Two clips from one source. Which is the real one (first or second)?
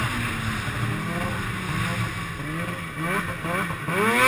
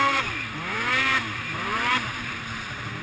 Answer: first